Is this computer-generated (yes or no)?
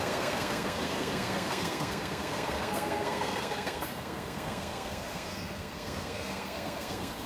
yes